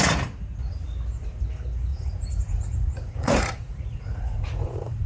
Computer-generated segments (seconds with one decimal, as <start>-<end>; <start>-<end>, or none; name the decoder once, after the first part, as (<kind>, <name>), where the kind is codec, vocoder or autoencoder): 1.9-5.1 (vocoder, Vocos)